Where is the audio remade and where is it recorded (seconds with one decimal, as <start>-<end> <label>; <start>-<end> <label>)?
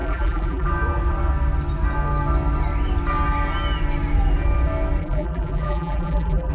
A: 0.0-0.7 remade; 0.7-5.0 recorded; 5.0-6.5 remade